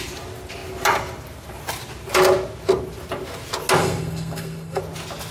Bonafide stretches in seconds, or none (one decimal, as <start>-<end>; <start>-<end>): 0.0-3.8; 4.8-5.3